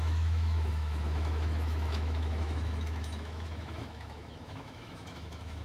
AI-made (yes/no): yes